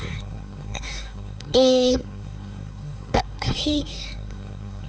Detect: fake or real fake